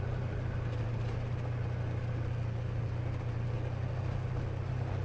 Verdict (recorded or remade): recorded